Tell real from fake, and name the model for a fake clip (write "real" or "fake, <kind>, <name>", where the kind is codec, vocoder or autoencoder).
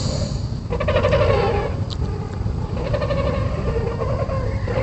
real